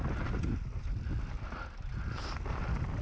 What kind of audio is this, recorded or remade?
recorded